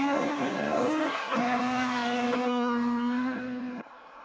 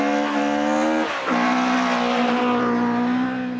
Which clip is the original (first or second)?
second